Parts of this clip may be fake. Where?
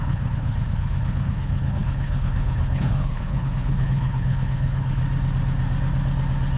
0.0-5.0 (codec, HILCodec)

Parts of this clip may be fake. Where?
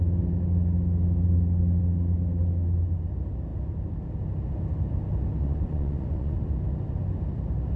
5.4-6.4 (vocoder, Vocos)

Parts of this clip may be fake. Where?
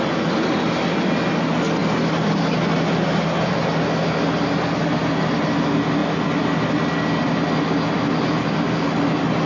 none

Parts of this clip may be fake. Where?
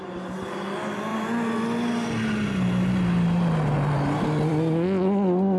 none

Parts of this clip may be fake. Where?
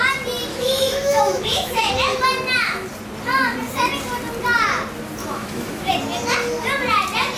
0.5-1.9 (autoencoder, DAC-VAE); 5.2-5.9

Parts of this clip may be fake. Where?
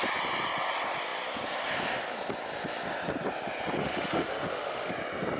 3.8-4.9 (autoencoder, DAC-VAE)